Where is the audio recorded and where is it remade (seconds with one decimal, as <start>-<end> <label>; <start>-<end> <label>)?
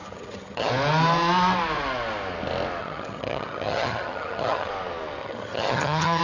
0.0-0.7 remade; 0.7-2.8 recorded; 2.8-4.7 remade; 4.7-5.2 recorded; 5.2-6.2 remade